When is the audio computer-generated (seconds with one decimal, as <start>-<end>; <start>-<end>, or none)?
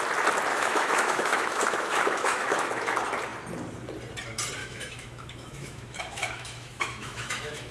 0.5-2.9; 4.6-7.7